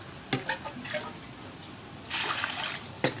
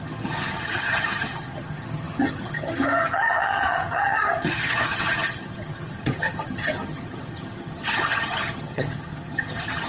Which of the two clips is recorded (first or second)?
first